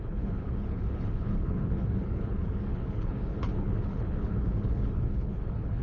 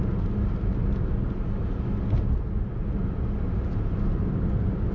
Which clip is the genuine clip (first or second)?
second